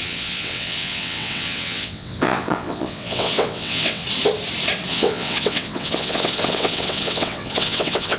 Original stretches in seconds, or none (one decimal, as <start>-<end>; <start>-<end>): 4.0-4.9